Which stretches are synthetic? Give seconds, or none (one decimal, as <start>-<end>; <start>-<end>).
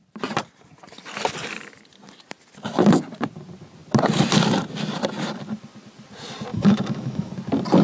6.5-7.3